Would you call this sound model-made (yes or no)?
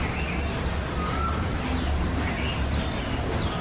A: no